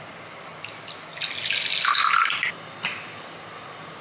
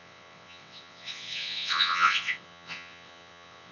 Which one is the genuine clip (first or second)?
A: first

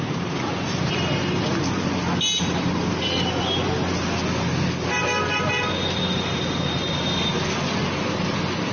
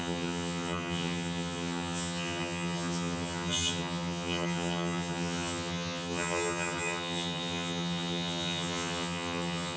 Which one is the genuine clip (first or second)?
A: first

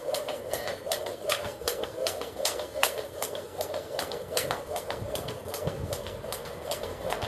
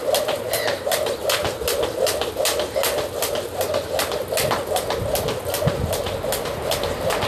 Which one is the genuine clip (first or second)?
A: second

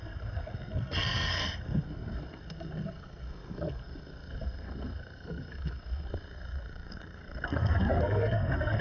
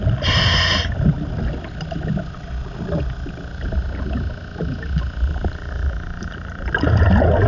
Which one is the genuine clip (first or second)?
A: second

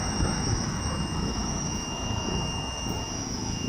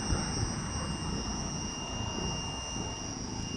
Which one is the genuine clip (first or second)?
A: second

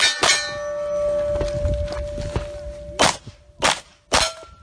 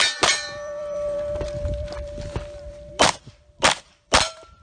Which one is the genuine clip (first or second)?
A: first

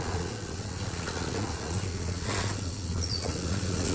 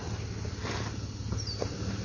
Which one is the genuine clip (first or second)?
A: second